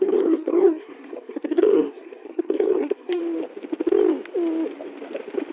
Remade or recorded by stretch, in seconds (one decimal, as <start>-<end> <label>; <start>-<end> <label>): 0.0-3.2 remade; 3.2-5.5 recorded